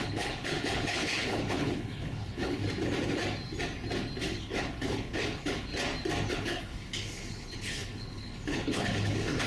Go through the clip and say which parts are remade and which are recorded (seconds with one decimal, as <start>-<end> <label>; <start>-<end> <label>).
0.0-2.6 remade; 2.6-4.2 recorded; 4.2-5.7 remade; 5.7-6.3 recorded; 6.3-9.5 remade